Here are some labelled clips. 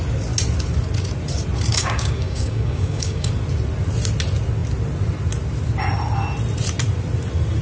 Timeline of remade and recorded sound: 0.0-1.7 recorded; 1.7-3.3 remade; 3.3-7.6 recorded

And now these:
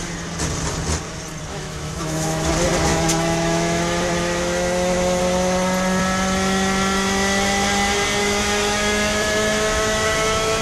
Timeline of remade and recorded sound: 0.0-1.5 recorded; 1.5-2.5 remade; 2.5-2.9 recorded; 2.9-5.2 remade; 5.2-8.2 recorded; 8.2-10.6 remade

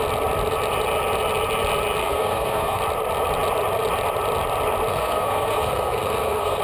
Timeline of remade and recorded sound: 0.0-2.0 recorded; 2.0-2.8 remade; 2.8-4.9 recorded; 4.9-6.6 remade

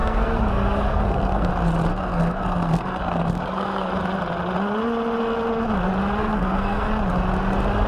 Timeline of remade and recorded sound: 0.0-1.5 remade; 1.5-1.9 recorded; 1.9-3.9 remade; 3.9-6.2 recorded; 6.2-6.9 remade; 6.9-7.9 recorded